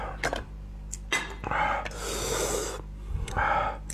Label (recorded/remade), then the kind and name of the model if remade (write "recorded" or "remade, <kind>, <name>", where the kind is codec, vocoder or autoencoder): recorded